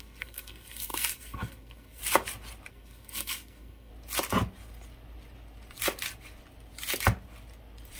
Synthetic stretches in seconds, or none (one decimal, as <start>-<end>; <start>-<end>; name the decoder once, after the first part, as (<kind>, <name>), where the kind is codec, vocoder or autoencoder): 0.0-2.0 (codec, SNAC); 2.7-3.9